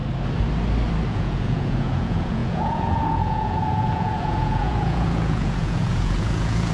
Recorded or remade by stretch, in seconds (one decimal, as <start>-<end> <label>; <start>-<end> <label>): 0.0-1.1 recorded; 1.1-6.7 remade